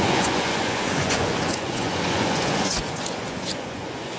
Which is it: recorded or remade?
remade